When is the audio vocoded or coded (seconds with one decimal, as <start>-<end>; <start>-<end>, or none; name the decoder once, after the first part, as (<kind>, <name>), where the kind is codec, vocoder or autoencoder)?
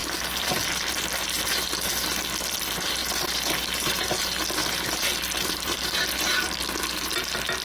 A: 0.0-1.6 (vocoder, BigVGAN v2); 3.0-4.0; 4.6-6.8